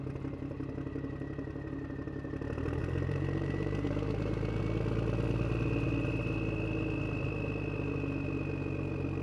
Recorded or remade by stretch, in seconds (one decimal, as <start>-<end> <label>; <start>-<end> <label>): 0.0-2.8 recorded; 2.8-4.6 remade; 4.6-9.2 recorded